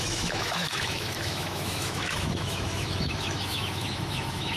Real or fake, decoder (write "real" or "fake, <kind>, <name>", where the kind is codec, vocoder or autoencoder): fake, autoencoder, DAC-VAE